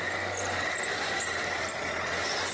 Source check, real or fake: real